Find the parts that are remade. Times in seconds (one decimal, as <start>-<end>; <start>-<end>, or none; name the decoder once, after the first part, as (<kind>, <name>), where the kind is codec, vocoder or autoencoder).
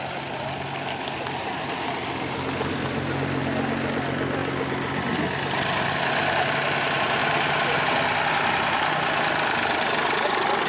7.2-7.8 (vocoder, BigVGAN v2)